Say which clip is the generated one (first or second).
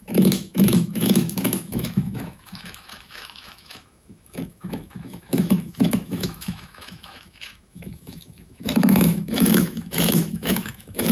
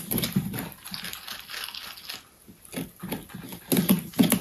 first